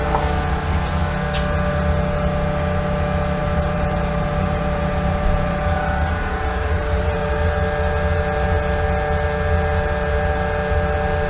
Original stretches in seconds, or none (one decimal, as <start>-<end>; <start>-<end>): 0.0-3.4; 7.5-11.3